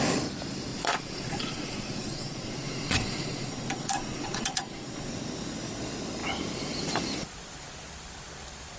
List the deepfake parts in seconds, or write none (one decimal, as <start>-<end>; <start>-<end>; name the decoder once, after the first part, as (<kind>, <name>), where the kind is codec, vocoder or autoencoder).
0.7-5.1 (vocoder, Vocos)